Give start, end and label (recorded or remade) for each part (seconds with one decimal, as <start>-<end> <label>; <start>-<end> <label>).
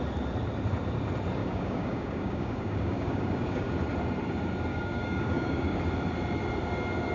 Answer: 0.0-1.4 recorded; 1.4-3.7 remade; 3.7-4.7 recorded; 4.7-5.8 remade; 5.8-7.1 recorded